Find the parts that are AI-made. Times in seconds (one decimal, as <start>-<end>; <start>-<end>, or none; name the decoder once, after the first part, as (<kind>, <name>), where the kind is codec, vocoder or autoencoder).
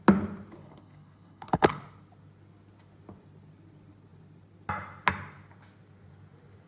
0.6-1.8 (codec, HILCodec)